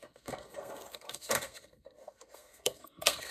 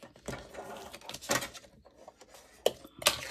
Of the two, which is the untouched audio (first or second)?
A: second